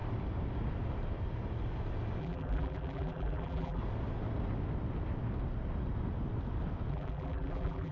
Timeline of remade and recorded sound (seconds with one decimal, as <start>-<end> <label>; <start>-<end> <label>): 0.0-2.2 recorded; 2.2-3.8 remade; 3.8-6.9 recorded; 6.9-7.9 remade